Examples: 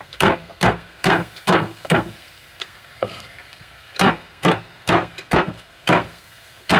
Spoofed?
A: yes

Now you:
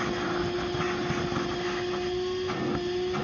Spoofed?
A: no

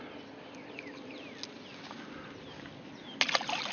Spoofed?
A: no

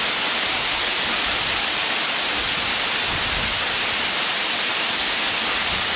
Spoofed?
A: no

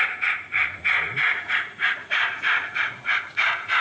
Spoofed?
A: yes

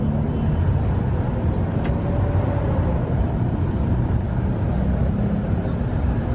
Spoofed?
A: no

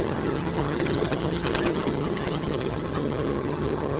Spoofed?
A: yes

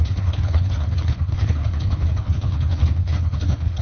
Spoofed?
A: yes